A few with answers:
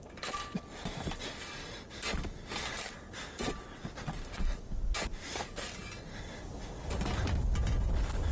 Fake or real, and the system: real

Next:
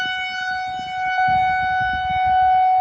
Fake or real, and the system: real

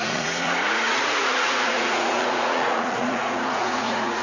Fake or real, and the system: fake, vocoder, Vocos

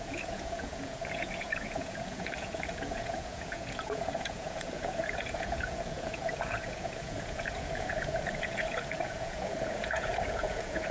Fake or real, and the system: fake, vocoder, Vocos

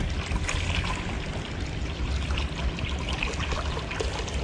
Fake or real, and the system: real